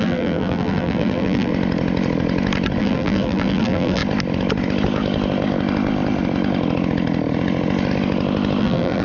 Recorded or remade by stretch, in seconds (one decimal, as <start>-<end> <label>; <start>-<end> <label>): 0.0-1.5 remade; 1.5-2.8 recorded; 2.8-4.0 remade; 4.0-8.6 recorded; 8.6-9.0 remade